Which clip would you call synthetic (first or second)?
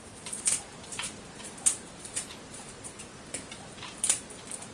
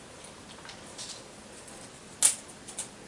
first